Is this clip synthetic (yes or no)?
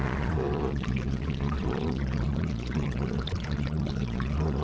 yes